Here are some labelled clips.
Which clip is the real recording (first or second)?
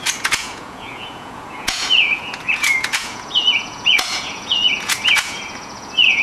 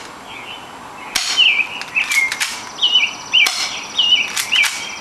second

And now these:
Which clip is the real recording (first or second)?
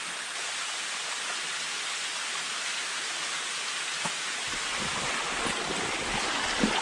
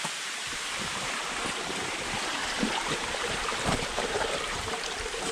first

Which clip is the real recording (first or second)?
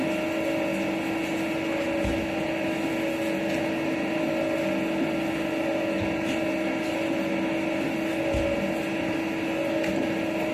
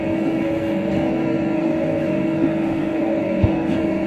first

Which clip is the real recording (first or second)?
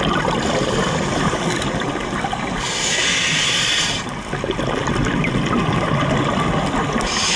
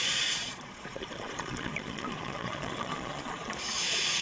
first